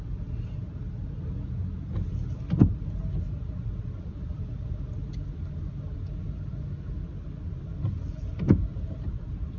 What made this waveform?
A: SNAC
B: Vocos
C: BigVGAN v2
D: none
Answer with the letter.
D